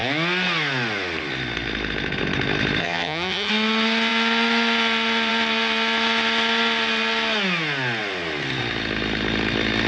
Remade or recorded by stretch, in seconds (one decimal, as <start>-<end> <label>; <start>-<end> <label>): 0.0-2.8 recorded; 2.8-3.5 remade; 3.5-9.9 recorded